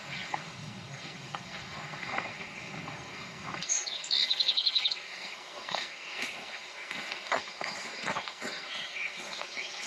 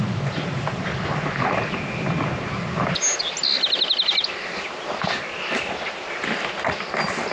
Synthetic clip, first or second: first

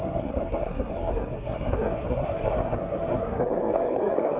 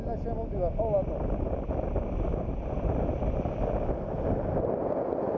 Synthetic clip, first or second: first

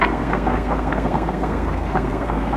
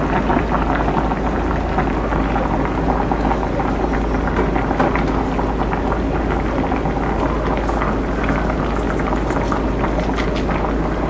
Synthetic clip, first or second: first